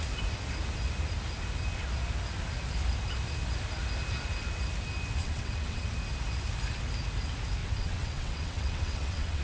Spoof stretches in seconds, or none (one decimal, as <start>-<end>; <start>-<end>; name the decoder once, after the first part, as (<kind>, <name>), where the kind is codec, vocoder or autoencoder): 5.2-5.9 (vocoder, WaveNeXt); 7.6-9.4